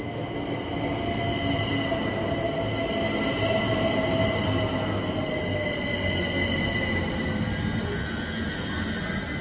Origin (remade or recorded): recorded